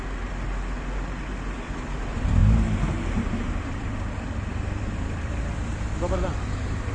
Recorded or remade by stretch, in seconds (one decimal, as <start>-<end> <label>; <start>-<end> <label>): 0.0-6.9 recorded